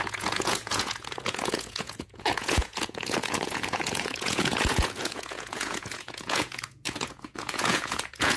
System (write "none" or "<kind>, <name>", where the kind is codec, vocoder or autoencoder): vocoder, Vocos